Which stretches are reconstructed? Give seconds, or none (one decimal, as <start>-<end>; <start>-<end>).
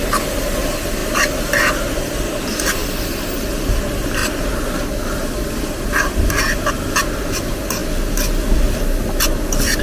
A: none